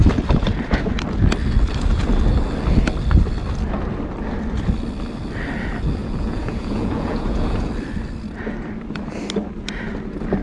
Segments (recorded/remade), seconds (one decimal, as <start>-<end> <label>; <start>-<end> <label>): 0.0-6.0 recorded; 6.0-7.7 remade; 7.7-10.4 recorded

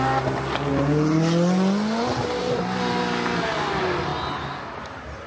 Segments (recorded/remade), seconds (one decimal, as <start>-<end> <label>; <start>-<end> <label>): 0.0-5.3 recorded

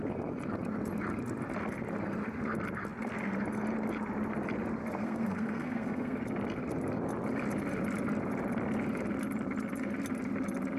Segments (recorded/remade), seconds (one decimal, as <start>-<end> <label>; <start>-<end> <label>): 0.0-5.0 recorded; 5.0-6.2 remade; 6.2-10.8 recorded

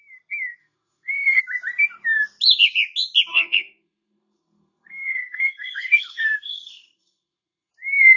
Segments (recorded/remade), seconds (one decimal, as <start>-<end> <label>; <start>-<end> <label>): 0.0-0.6 recorded; 0.6-1.4 remade; 1.4-3.3 recorded; 3.3-7.7 remade; 7.7-8.2 recorded